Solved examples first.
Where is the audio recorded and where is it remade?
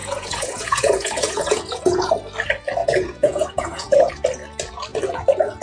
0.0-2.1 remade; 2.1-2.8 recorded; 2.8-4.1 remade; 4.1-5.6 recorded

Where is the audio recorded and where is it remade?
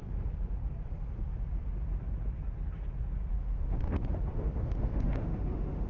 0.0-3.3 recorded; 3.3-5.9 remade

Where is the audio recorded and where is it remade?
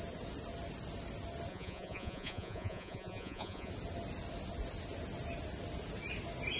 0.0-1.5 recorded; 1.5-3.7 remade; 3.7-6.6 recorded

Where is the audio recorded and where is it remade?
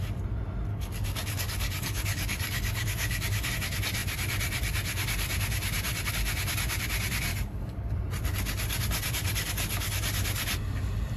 0.0-0.7 recorded; 0.7-3.5 remade; 3.5-7.3 recorded; 7.3-7.9 remade; 7.9-11.2 recorded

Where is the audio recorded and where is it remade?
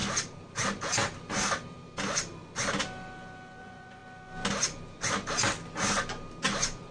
0.0-3.6 recorded; 3.6-4.0 remade; 4.0-6.9 recorded